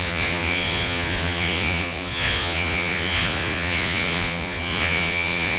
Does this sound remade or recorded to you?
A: remade